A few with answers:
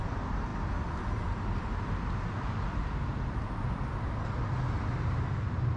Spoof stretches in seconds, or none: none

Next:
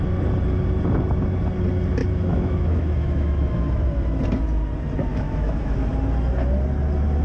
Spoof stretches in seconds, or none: 2.0-3.8; 5.1-5.9